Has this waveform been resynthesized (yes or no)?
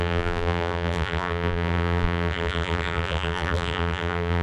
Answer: yes